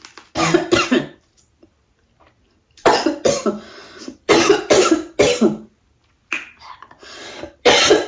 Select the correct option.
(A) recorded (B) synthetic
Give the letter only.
A